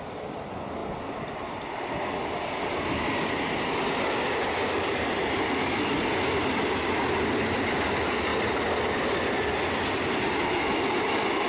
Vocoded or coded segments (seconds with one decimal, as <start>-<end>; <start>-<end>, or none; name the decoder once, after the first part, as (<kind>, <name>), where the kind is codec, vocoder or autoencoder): none